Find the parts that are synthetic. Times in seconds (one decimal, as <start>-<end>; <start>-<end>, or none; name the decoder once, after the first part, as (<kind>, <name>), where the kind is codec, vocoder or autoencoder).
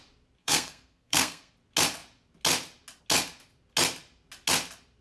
0.4-1.5 (codec, SNAC)